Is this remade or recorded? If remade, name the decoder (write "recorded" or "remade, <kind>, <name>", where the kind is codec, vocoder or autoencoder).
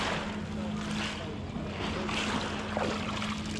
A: recorded